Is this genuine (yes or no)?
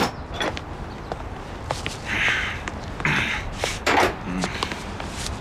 no